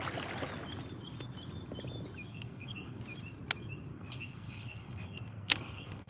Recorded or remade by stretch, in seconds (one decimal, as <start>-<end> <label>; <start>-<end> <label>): 0.0-2.3 recorded; 2.3-3.0 remade; 3.0-3.9 recorded; 3.9-6.1 remade